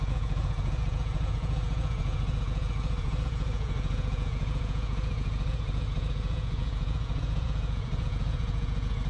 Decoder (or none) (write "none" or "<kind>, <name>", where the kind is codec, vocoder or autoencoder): vocoder, Vocos